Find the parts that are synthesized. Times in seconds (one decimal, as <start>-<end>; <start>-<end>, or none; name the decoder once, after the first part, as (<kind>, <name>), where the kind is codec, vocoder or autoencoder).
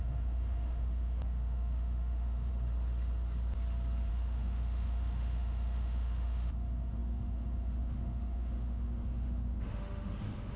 0.0-2.5 (autoencoder, DAC-VAE); 4.1-10.6